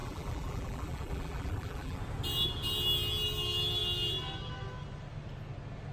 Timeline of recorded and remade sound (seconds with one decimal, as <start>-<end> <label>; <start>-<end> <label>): 0.0-2.0 remade; 2.0-5.9 recorded